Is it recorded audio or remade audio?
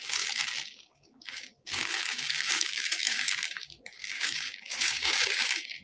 remade